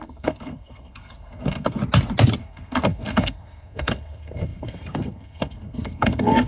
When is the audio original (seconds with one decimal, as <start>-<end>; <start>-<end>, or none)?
1.8-2.4